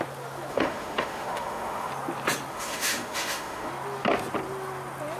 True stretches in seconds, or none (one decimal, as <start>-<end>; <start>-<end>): 0.0-0.5; 1.9-2.5; 3.7-5.2